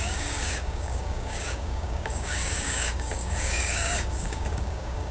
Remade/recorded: remade